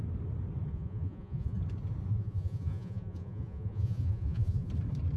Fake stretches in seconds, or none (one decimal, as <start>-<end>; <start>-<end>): 0.7-1.6; 2.1-4.7